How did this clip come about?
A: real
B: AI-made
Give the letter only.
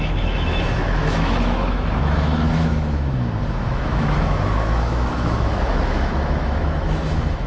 B